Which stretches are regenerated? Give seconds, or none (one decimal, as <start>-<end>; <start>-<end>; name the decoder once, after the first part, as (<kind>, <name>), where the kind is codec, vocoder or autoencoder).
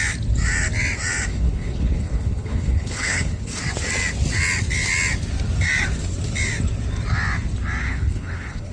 1.3-3.6 (codec, HILCodec); 7.8-8.7